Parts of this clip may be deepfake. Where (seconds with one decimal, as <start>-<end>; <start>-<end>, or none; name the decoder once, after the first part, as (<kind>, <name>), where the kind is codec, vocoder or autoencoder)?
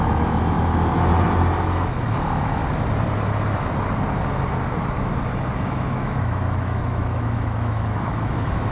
0.0-0.7 (autoencoder, DAC-VAE); 1.6-2.6; 5.6-8.7